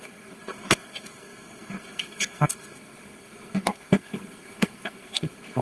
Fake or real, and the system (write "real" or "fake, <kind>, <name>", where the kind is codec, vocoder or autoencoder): fake, codec, SNAC